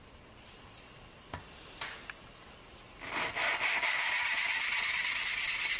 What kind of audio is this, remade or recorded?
recorded